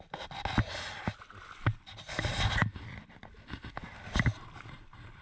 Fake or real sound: real